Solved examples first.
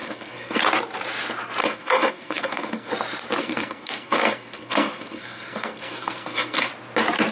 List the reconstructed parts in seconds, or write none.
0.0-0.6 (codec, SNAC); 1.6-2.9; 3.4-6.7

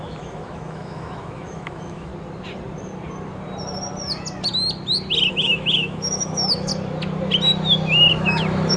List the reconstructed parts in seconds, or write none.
0.0-2.1 (autoencoder, DAC-VAE); 5.3-6.7; 8.1-8.8

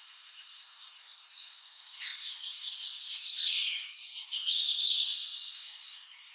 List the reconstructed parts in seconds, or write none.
0.0-6.3 (codec, SNAC)

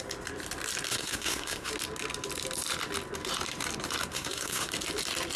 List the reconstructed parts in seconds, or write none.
0.9-1.7 (codec, SNAC); 4.1-4.7